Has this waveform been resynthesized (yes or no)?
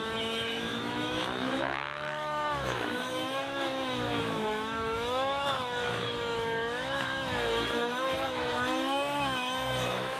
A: yes